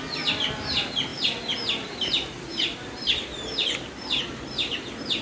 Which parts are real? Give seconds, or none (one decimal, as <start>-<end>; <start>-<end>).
0.0-5.2